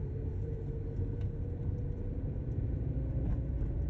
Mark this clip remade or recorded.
recorded